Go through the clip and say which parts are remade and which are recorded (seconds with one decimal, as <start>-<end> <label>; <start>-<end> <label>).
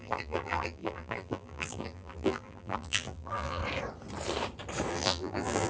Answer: 0.0-3.6 remade; 3.6-4.9 recorded; 4.9-5.7 remade